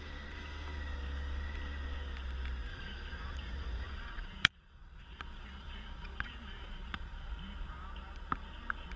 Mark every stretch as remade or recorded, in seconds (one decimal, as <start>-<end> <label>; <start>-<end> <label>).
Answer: 0.0-2.7 recorded; 2.7-7.3 remade; 7.3-9.0 recorded